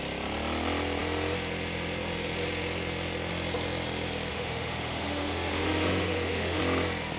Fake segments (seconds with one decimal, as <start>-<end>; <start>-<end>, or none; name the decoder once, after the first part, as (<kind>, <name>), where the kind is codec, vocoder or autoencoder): 4.3-6.6 (autoencoder, DAC-VAE)